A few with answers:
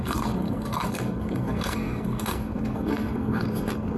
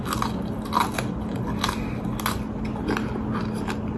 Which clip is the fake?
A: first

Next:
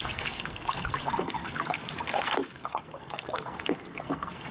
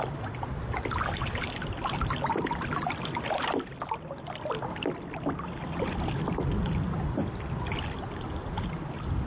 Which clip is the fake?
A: first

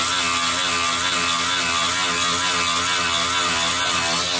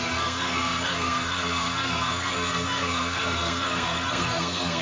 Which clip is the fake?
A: second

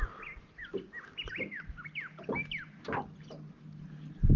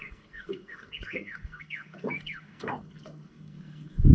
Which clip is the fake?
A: second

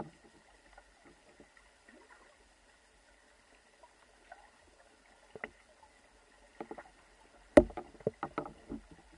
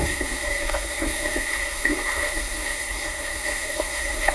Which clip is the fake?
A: second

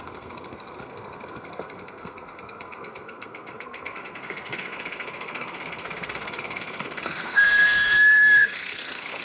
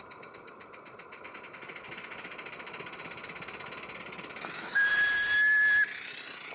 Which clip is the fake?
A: first